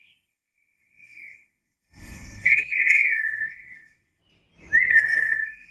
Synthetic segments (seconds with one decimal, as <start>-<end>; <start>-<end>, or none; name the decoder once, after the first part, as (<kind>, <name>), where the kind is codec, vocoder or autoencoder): 0.0-4.2 (codec, SNAC); 4.9-5.7